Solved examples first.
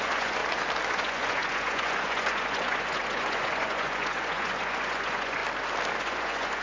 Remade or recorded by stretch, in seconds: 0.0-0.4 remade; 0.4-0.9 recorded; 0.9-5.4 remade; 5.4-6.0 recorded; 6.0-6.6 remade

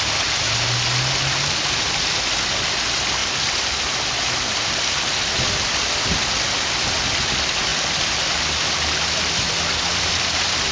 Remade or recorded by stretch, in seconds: 0.0-10.7 recorded

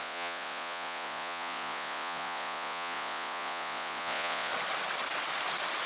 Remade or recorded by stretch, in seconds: 0.0-4.5 remade; 4.5-5.9 recorded

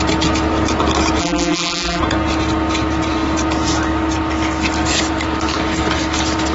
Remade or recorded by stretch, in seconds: 0.0-1.2 recorded; 1.2-2.0 remade; 2.0-6.5 recorded